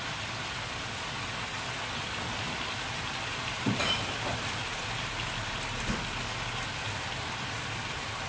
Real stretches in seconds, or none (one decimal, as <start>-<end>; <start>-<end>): 0.0-8.3